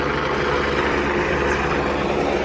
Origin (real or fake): fake